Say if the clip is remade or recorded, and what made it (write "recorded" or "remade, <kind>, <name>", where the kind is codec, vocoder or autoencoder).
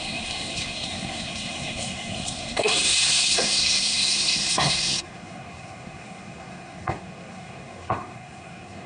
remade, codec, SNAC